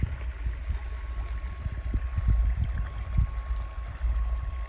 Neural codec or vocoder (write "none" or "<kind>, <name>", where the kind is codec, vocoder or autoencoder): none